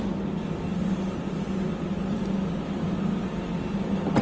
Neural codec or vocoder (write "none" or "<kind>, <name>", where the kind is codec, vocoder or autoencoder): none